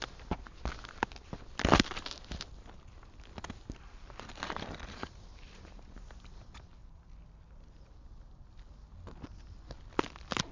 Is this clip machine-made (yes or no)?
no